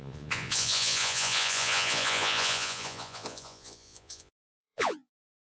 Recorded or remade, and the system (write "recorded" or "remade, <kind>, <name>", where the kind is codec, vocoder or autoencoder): remade, vocoder, Vocos